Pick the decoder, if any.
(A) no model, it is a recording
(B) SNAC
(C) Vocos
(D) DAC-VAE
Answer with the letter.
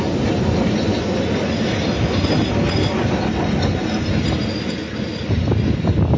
A